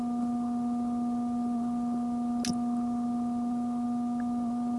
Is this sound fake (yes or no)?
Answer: no